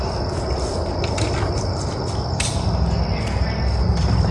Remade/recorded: recorded